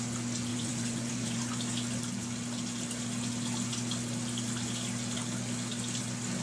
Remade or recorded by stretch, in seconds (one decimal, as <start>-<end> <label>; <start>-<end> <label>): 0.0-0.5 recorded; 0.5-1.4 remade; 1.4-6.4 recorded

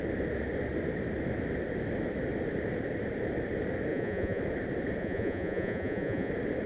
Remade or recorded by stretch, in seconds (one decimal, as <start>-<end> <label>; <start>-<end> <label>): 0.0-3.9 recorded; 3.9-4.4 remade; 4.4-5.0 recorded; 5.0-6.3 remade; 6.3-6.7 recorded

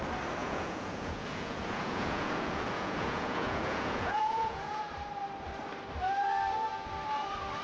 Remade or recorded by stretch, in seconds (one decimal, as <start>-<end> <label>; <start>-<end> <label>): 0.0-0.4 recorded; 0.4-4.9 remade; 4.9-7.6 recorded

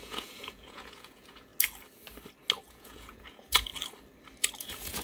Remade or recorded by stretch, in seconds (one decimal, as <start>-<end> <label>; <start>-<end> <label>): 0.0-1.5 remade; 1.5-2.7 recorded; 2.7-3.7 remade; 3.7-4.6 recorded; 4.6-5.0 remade

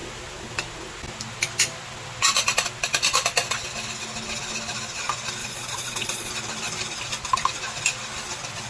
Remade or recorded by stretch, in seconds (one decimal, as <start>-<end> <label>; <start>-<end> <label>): 0.0-5.4 recorded; 5.4-6.3 remade; 6.3-8.7 recorded

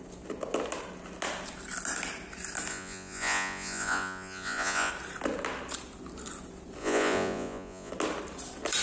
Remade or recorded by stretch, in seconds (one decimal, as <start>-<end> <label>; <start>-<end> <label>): 0.0-2.7 recorded; 2.7-4.9 remade; 4.9-6.8 recorded; 6.8-7.9 remade; 7.9-8.8 recorded